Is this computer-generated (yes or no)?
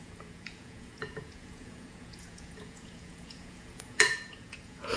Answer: yes